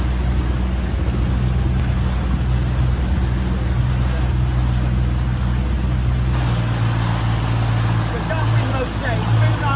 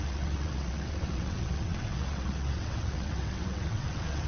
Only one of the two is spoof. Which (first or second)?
second